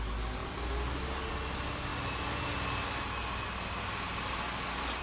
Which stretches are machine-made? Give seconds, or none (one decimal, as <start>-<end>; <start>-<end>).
none